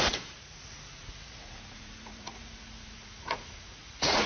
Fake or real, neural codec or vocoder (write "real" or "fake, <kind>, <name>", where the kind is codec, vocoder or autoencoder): fake, vocoder, Vocos